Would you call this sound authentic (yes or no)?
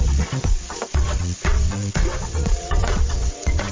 no